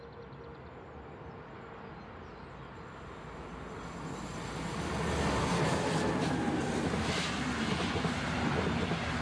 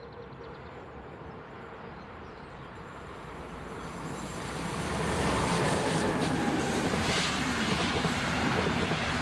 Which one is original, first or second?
first